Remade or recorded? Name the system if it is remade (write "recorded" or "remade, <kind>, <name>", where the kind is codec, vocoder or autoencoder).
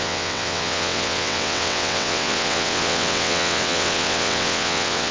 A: remade, vocoder, WaveNeXt